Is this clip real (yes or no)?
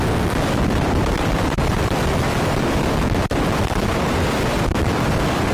yes